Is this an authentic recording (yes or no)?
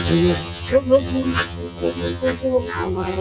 no